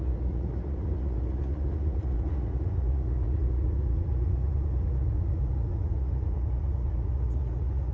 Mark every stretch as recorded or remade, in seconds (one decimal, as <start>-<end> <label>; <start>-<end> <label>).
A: 0.0-7.9 remade